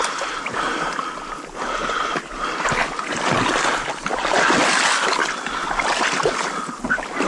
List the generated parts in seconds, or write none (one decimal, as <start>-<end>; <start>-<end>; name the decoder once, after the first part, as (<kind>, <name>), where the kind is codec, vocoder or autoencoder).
none